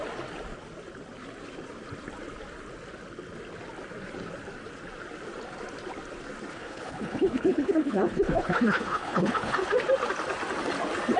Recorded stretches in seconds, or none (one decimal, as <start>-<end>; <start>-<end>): 0.0-6.5; 9.7-11.2